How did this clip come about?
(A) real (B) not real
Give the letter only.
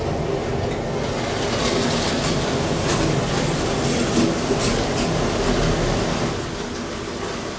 A